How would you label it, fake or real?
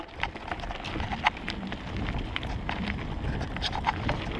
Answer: real